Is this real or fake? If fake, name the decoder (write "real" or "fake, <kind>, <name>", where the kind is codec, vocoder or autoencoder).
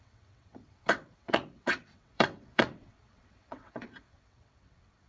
fake, vocoder, WaveNeXt